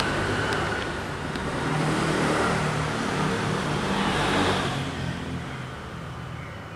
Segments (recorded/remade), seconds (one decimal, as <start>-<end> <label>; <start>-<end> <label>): 0.0-1.4 recorded; 1.4-4.8 remade; 4.8-6.8 recorded